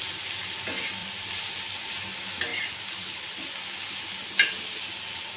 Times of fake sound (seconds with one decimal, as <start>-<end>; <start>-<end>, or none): 1.0-1.5; 2.5-3.4